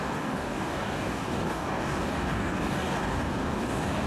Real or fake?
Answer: fake